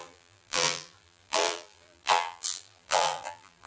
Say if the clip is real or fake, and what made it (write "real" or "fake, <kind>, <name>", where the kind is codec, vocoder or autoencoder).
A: fake, vocoder, BigVGAN v2